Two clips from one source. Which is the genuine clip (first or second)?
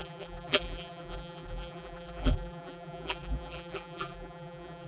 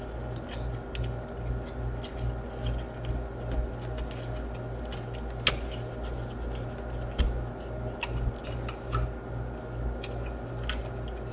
second